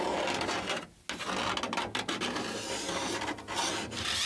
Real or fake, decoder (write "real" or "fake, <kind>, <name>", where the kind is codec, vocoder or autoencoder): real